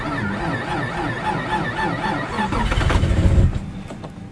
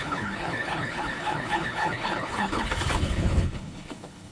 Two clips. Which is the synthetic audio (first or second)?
second